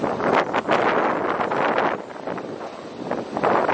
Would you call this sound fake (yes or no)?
no